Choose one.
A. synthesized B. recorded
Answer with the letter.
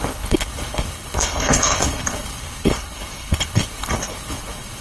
A